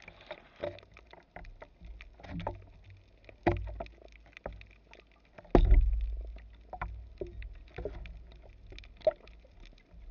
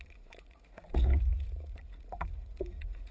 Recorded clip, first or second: first